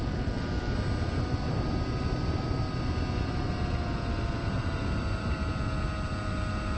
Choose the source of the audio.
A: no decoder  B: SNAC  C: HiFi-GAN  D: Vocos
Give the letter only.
A